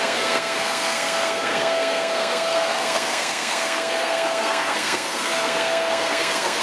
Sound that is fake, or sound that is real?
fake